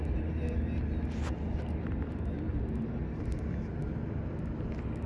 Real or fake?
real